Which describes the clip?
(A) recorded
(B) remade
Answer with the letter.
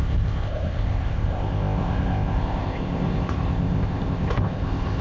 B